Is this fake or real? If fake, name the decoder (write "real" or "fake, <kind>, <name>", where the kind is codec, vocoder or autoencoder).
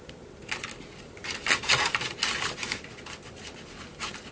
real